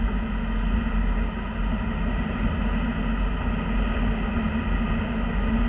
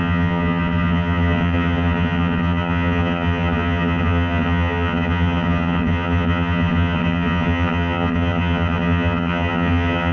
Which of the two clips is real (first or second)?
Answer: first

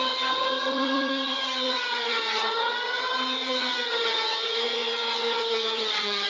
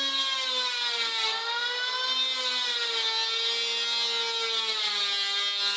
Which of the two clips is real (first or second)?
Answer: second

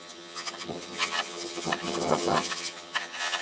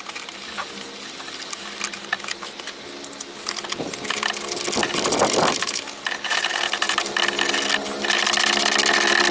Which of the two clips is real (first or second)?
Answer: second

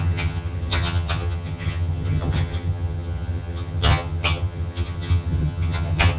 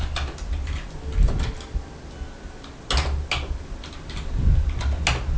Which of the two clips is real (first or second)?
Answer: second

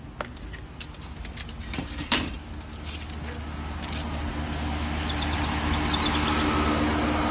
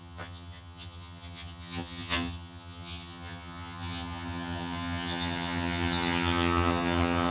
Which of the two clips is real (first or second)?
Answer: first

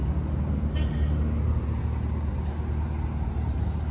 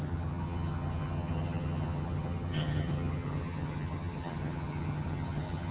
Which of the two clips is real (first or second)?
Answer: first